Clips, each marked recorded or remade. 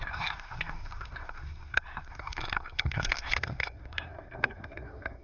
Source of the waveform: remade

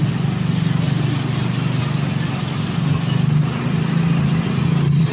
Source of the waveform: recorded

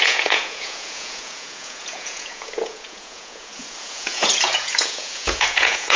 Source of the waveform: remade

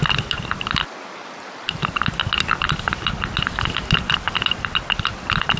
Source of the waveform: recorded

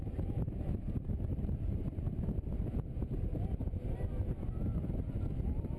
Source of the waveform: recorded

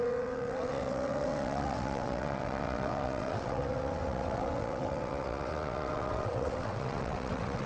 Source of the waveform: remade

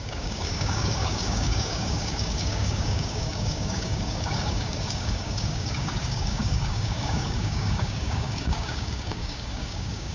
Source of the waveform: remade